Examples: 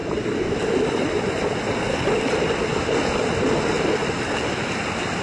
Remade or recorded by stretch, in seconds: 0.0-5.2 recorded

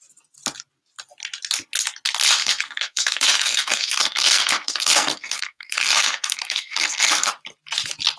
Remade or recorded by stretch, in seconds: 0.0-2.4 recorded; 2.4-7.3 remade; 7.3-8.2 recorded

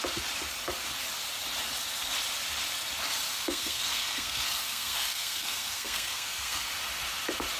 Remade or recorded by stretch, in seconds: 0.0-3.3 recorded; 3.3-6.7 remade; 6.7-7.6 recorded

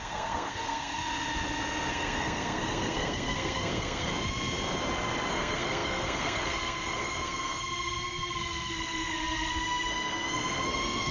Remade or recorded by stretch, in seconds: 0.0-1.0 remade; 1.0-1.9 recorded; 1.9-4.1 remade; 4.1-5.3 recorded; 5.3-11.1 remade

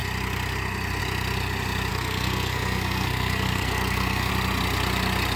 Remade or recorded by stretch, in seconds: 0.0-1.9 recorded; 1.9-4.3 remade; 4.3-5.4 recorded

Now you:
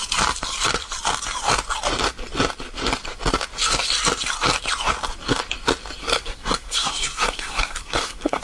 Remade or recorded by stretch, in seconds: 0.0-6.0 recorded; 6.0-8.4 remade